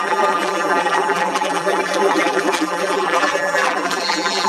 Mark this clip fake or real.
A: fake